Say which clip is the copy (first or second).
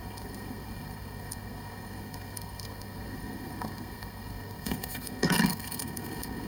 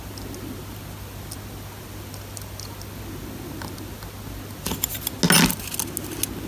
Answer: first